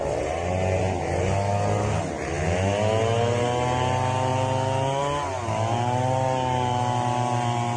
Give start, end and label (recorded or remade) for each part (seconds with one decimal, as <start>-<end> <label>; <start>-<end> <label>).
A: 0.0-7.8 recorded